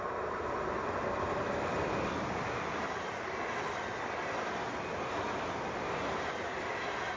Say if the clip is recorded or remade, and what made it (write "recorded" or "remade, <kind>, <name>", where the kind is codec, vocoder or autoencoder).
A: recorded